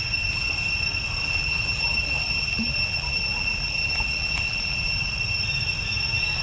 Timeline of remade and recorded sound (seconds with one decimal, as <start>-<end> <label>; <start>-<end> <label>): 0.0-1.2 recorded; 1.2-5.0 remade; 5.0-6.4 recorded